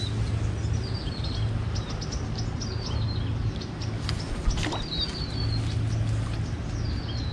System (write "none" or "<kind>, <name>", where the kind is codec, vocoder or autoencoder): none